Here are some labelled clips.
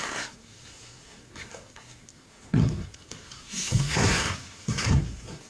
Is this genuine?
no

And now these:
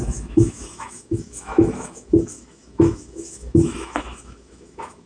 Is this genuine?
no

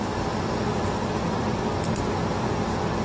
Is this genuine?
yes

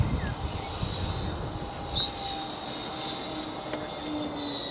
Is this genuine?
yes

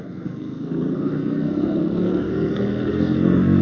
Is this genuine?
no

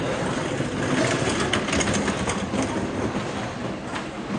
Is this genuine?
yes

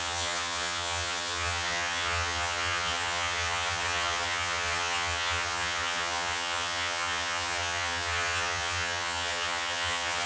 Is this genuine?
no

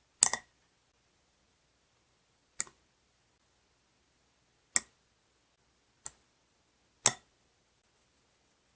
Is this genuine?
yes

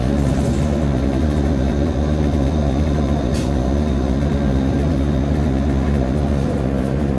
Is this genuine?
no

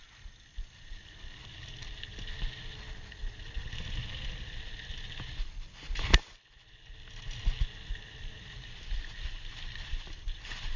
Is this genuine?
yes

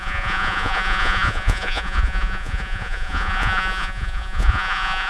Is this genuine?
no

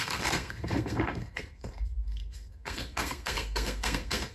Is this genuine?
no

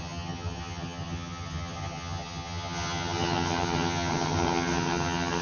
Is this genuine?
no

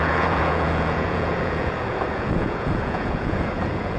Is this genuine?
no